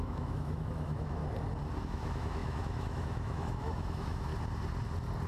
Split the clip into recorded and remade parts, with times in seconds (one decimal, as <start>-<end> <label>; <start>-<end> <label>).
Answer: 0.0-1.2 remade; 1.2-1.8 recorded; 1.8-4.3 remade; 4.3-5.3 recorded